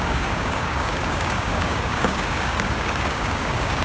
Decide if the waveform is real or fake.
fake